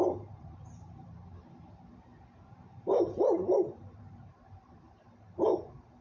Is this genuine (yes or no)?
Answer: no